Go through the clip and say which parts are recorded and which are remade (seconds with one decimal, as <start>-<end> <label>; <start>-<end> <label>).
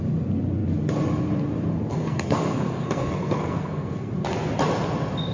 0.0-1.9 recorded; 1.9-4.1 remade; 4.1-5.3 recorded